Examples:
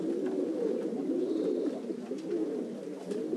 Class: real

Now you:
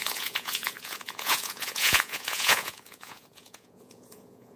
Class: fake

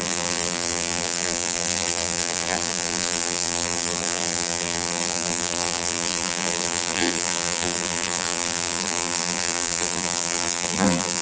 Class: fake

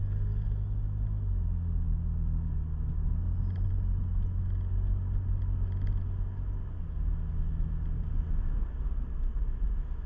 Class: real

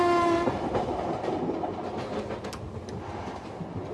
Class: real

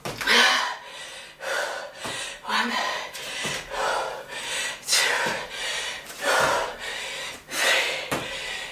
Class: real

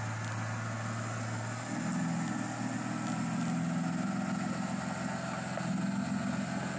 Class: real